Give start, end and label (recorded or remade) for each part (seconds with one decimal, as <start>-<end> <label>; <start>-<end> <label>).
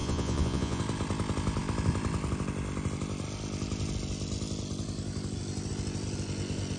0.0-0.8 remade; 0.8-6.8 recorded